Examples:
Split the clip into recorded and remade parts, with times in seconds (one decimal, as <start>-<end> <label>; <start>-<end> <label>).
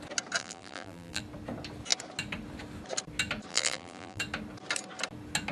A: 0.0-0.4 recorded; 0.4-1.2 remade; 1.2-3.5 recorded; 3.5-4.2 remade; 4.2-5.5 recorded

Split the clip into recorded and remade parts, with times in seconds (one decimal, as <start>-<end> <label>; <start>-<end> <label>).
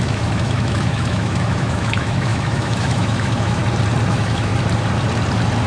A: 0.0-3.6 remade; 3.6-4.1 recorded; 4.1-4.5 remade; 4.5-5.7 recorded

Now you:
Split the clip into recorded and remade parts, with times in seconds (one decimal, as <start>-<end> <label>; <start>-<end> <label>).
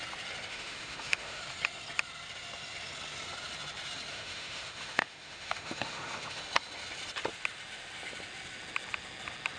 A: 0.0-0.5 recorded; 0.5-1.4 remade; 1.4-4.1 recorded; 4.1-6.4 remade; 6.4-9.6 recorded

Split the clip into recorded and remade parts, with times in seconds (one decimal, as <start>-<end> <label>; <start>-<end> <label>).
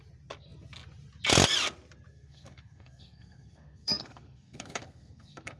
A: 0.0-2.1 recorded; 2.1-5.6 remade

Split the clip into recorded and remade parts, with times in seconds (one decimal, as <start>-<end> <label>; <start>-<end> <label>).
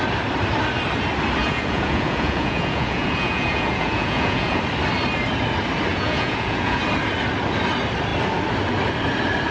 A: 0.0-1.4 recorded; 1.4-4.6 remade; 4.6-5.9 recorded; 5.9-6.8 remade; 6.8-9.5 recorded